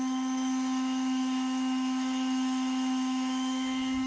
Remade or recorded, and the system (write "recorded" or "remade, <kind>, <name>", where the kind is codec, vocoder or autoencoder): remade, autoencoder, DAC-VAE